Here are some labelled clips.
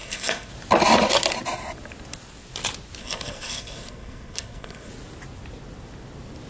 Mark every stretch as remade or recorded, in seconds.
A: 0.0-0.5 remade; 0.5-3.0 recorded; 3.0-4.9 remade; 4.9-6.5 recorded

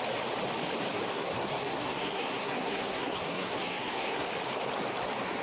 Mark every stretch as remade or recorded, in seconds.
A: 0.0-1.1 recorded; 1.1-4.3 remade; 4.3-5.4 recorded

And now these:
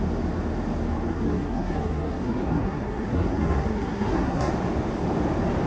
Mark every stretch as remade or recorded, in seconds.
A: 0.0-1.1 recorded; 1.1-4.5 remade; 4.5-5.7 recorded

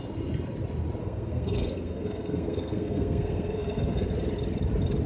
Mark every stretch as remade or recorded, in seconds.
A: 0.0-1.0 recorded; 1.0-4.1 remade; 4.1-5.1 recorded

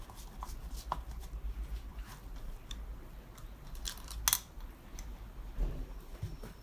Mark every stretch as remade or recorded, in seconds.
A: 0.0-6.6 recorded

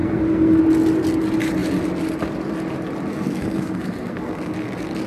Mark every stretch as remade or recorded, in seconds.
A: 0.0-0.6 remade; 0.6-3.1 recorded; 3.1-4.5 remade; 4.5-5.1 recorded

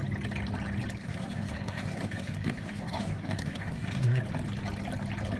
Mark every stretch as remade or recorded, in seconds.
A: 0.0-1.0 recorded; 1.0-4.2 remade; 4.2-5.4 recorded